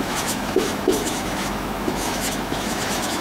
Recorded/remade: remade